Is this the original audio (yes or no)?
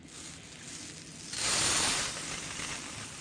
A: yes